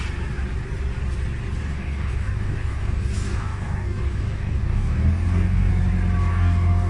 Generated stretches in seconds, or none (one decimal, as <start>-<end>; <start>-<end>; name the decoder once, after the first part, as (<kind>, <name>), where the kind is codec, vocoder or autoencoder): 1.6-5.7 (codec, DAC); 6.3-6.9